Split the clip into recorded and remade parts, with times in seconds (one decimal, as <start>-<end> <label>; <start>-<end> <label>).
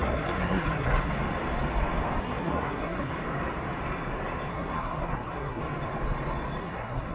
0.0-1.1 remade; 1.1-2.2 recorded; 2.2-3.1 remade; 3.1-4.5 recorded; 4.5-5.6 remade; 5.6-6.6 recorded; 6.6-7.1 remade